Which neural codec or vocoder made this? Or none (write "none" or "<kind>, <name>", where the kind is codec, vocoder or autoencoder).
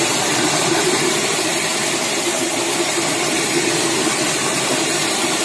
vocoder, BigVGAN v2